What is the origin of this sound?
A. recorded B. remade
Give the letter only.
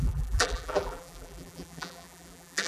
B